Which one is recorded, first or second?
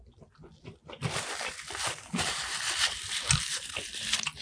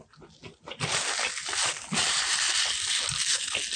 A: second